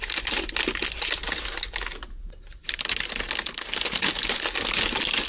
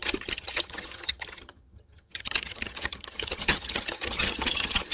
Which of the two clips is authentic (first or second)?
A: first